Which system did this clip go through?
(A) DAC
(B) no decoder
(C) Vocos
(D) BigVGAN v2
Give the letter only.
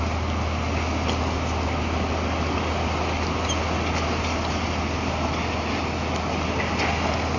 B